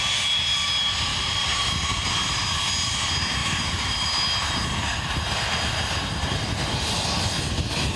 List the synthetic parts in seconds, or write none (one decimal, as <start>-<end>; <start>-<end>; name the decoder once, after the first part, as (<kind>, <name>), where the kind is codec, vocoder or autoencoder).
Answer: 1.1-1.6 (vocoder, BigVGAN v2); 3.4-4.3